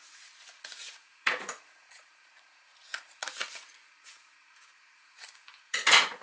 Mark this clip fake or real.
fake